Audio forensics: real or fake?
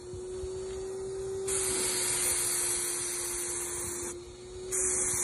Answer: real